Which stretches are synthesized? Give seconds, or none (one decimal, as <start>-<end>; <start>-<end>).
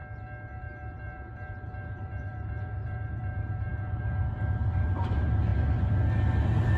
0.6-5.5